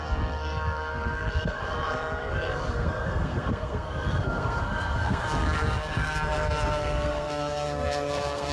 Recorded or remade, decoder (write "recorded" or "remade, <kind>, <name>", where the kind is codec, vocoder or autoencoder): remade, codec, SNAC